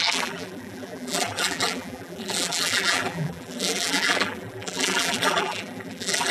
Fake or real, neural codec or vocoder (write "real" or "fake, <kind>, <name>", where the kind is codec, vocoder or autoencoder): fake, vocoder, BigVGAN v2